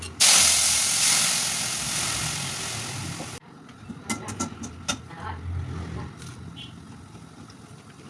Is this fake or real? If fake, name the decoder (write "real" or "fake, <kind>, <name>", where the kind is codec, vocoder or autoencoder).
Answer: real